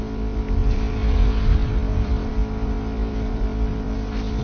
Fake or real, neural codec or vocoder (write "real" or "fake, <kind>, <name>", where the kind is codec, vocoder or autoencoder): real